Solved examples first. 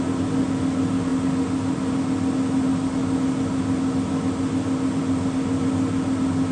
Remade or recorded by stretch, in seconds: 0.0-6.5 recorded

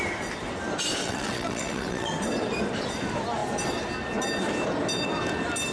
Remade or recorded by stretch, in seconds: 0.0-1.0 recorded; 1.0-2.1 remade; 2.1-5.7 recorded

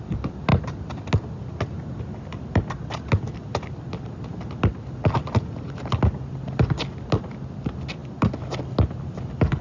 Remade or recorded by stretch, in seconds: 0.0-9.6 recorded

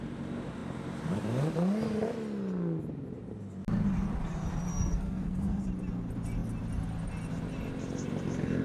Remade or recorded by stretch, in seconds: 0.0-4.7 recorded; 4.7-5.6 remade; 5.6-8.6 recorded

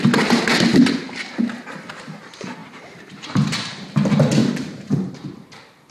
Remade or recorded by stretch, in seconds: 0.0-2.6 recorded; 2.6-3.5 remade; 3.5-4.4 recorded; 4.4-5.5 remade; 5.5-5.9 recorded

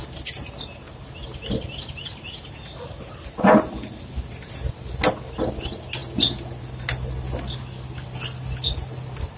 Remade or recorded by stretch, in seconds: 0.0-9.4 recorded

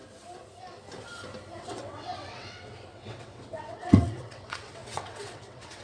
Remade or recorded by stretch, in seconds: 0.0-1.6 recorded; 1.6-5.8 remade